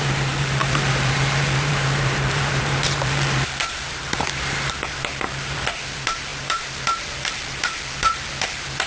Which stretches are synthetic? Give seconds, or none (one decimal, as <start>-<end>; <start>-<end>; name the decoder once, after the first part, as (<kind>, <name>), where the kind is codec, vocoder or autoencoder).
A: 0.0-8.9 (vocoder, BigVGAN v2)

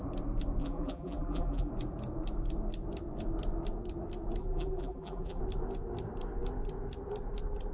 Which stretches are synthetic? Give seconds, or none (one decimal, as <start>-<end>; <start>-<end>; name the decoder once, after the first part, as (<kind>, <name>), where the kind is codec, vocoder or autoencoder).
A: 0.6-1.7 (vocoder, BigVGAN v2); 4.4-5.4

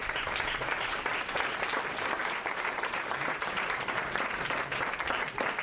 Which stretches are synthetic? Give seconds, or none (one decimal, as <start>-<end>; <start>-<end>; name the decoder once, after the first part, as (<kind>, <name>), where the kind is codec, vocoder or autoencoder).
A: 0.0-1.1 (vocoder, BigVGAN v2); 2.2-4.9

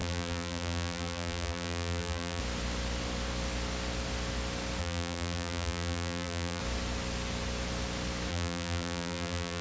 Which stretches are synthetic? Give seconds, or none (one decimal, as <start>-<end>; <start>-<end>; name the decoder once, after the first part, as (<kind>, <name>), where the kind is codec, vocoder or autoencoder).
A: 0.0-2.4 (vocoder, BigVGAN v2); 4.8-6.6; 8.3-9.6

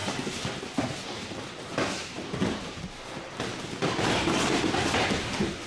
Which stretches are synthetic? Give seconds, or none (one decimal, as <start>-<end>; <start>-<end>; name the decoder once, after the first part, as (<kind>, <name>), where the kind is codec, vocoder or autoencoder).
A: 0.0-0.6 (vocoder, BigVGAN v2); 2.0-3.6

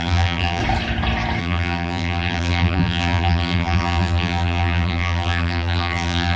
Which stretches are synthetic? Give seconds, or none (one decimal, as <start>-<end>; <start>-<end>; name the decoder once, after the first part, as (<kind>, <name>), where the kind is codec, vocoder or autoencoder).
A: 0.0-0.6 (vocoder, BigVGAN v2); 1.4-6.4

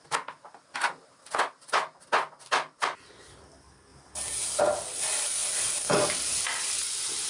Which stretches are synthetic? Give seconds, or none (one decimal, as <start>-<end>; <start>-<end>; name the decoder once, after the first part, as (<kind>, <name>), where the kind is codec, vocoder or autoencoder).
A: 3.9-4.6 (vocoder, BigVGAN v2); 5.4-6.7